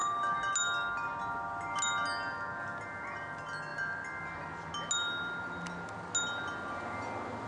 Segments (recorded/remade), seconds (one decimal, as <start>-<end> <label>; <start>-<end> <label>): 0.0-7.5 recorded